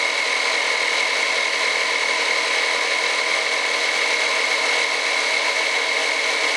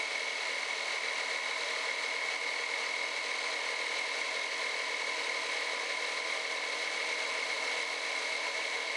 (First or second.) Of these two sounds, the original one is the first